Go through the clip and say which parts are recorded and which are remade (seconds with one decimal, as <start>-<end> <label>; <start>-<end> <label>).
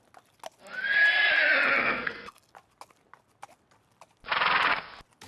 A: 0.0-1.8 recorded; 1.8-2.5 remade; 2.5-5.3 recorded